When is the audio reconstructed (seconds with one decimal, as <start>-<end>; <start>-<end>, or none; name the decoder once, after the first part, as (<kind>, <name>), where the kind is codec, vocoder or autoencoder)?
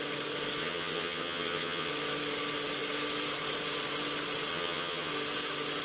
0.6-1.9 (vocoder, HiFi-GAN); 4.5-5.1